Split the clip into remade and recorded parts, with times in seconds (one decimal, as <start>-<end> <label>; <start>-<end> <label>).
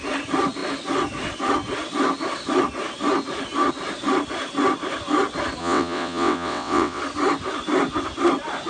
0.0-5.6 recorded; 5.6-7.0 remade; 7.0-8.7 recorded